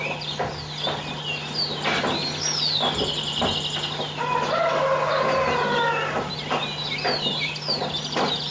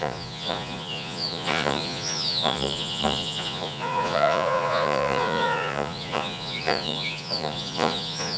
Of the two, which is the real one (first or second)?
first